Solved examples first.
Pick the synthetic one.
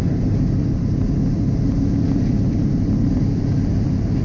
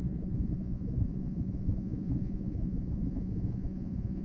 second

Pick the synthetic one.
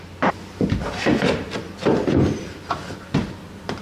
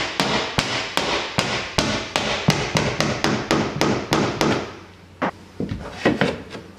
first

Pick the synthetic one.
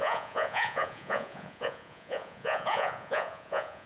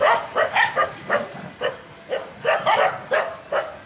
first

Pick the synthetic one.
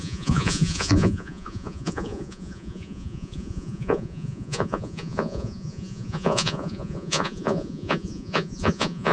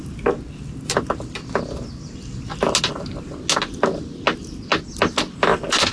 first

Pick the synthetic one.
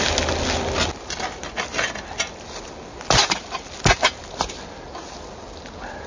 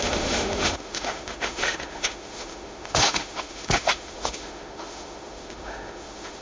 second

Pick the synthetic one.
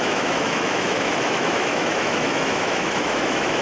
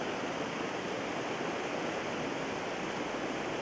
first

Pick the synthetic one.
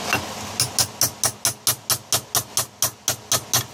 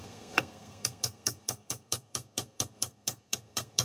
second